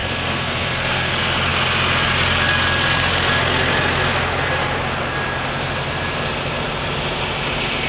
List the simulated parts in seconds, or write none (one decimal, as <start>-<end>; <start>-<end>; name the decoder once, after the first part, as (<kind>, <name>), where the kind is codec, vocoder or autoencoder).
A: 0.0-1.1 (codec, SNAC)